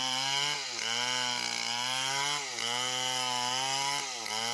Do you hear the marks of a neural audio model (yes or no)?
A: no